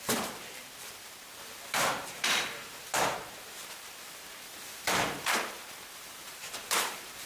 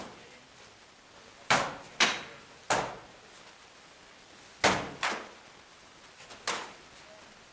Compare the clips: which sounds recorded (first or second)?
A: second